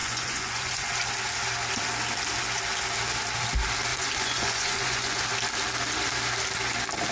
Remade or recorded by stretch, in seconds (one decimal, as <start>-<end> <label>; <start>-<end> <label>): 0.0-0.9 remade; 0.9-3.9 recorded; 3.9-5.2 remade; 5.2-7.1 recorded